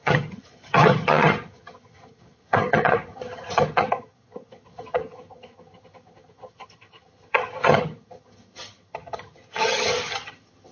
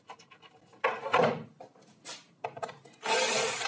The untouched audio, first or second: second